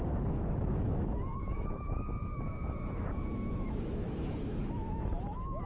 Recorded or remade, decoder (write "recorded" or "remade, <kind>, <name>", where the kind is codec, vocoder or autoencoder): remade, autoencoder, DAC-VAE